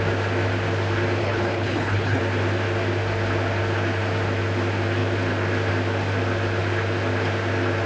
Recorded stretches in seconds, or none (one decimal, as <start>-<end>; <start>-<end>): 0.0-1.2; 2.2-7.9